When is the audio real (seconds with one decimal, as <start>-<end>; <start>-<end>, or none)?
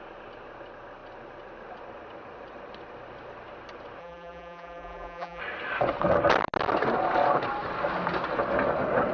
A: 0.0-4.0; 5.4-9.1